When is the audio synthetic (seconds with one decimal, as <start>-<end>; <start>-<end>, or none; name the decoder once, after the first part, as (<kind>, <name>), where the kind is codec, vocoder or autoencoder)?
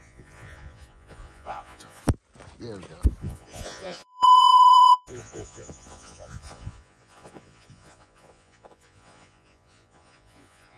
0.0-2.0 (vocoder, Vocos); 3.2-10.8